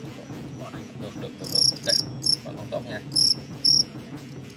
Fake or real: fake